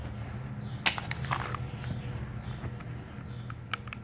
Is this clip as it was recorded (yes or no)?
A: yes